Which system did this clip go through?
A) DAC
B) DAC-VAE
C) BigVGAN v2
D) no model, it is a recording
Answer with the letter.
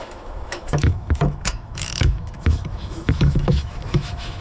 B